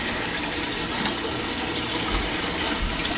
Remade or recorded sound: recorded